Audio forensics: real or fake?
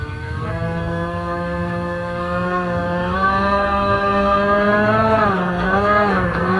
fake